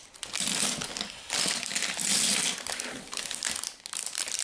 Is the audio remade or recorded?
recorded